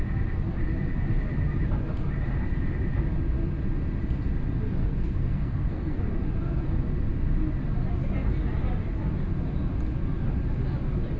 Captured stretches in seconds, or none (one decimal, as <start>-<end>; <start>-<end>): 0.0-4.8; 6.0-11.2